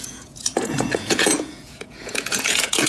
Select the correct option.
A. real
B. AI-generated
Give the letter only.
B